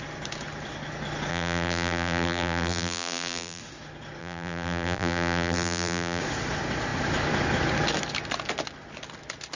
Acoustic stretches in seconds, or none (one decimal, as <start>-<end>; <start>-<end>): 0.0-1.3; 3.6-4.2; 6.2-9.6